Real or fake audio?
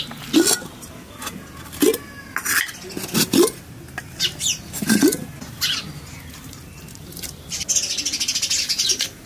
real